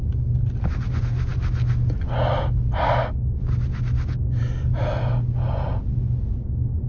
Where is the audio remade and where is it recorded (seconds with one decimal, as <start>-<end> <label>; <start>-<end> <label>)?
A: 0.0-6.9 recorded